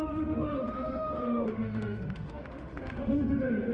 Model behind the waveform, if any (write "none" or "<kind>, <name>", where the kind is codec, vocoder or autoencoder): autoencoder, DAC-VAE